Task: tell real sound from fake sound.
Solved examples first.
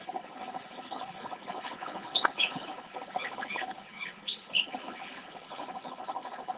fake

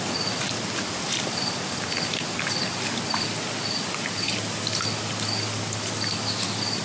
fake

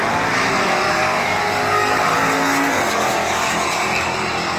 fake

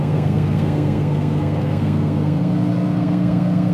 fake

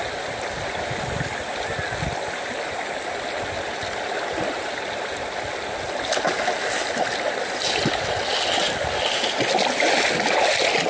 real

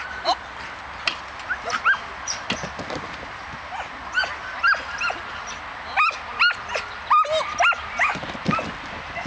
real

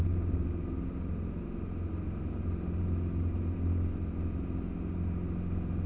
real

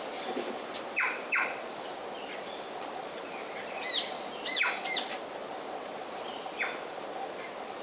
real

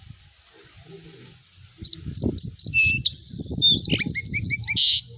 real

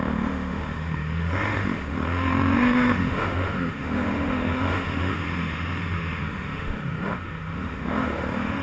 fake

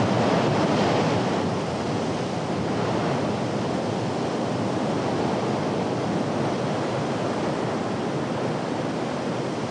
real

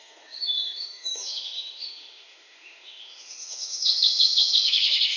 fake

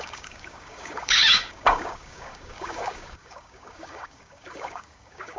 fake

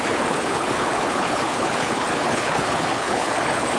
fake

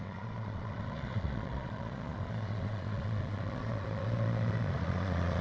fake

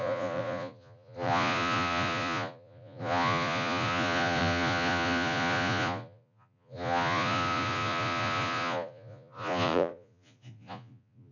fake